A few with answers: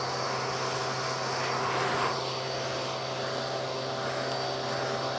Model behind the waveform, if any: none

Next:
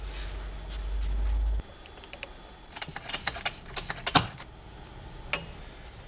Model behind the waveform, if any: none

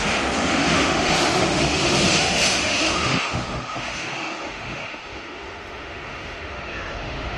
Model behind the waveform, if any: autoencoder, DAC-VAE